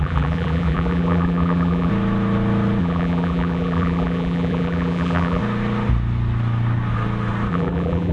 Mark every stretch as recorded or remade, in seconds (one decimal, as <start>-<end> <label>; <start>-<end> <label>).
0.0-1.9 remade; 1.9-2.8 recorded; 2.8-5.4 remade; 5.4-7.5 recorded; 7.5-8.1 remade